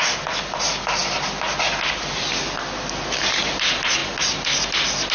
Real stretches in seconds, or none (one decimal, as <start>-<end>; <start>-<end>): 0.0-5.1